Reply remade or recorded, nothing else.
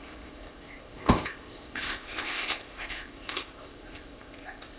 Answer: remade